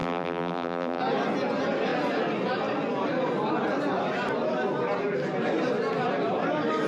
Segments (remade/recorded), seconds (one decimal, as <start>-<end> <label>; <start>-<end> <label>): 0.0-1.0 remade; 1.0-6.9 recorded